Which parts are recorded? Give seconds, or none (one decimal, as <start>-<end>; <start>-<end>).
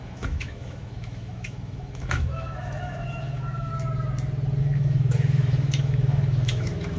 3.7-4.6